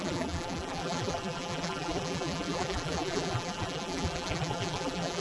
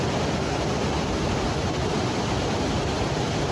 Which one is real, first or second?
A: second